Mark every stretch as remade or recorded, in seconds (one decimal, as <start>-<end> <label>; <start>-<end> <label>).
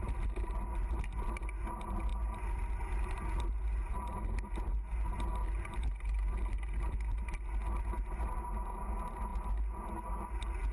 0.0-10.7 recorded